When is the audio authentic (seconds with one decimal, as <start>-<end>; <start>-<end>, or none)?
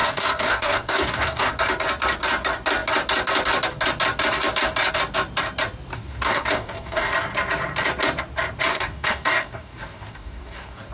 1.5-5.9; 7.1-8.7